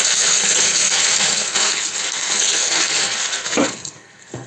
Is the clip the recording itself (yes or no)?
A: no